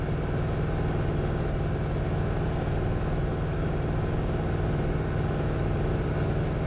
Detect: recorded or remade recorded